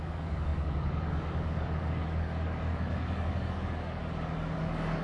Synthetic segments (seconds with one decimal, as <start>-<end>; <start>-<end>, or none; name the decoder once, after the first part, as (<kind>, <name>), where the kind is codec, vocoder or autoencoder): 0.0-4.0 (codec, DAC); 4.6-5.0